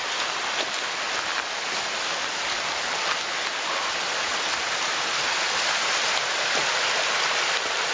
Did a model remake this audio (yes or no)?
no